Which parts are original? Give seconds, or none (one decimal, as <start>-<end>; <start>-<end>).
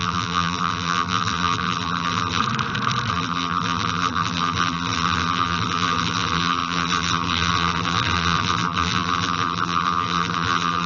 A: 2.4-3.1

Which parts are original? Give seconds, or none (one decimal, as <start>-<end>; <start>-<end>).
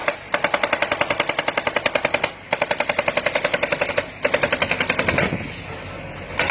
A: 0.0-6.5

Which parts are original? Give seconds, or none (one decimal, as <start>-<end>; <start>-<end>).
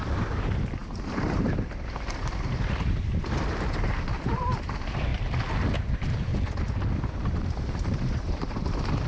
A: 5.1-5.8; 6.3-7.0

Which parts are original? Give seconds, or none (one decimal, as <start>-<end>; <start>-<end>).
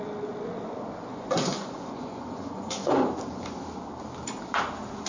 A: 0.0-1.1; 3.1-5.1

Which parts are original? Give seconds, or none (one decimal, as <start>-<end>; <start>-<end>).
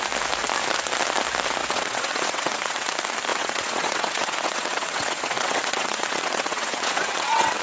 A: 0.0-1.6; 2.9-3.3